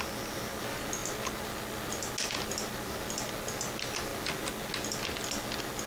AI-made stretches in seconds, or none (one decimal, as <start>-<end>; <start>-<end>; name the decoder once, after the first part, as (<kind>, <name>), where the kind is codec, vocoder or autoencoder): none